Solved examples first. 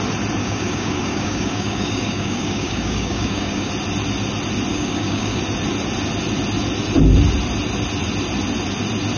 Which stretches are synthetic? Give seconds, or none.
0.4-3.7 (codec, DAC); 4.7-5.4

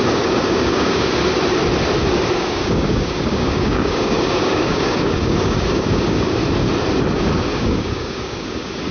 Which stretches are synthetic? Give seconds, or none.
0.0-1.2 (codec, DAC); 2.3-6.4; 7.2-8.9

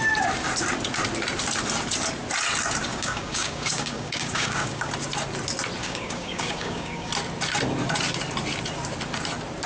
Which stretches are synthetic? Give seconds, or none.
2.9-4.9 (codec, DAC); 5.8-7.1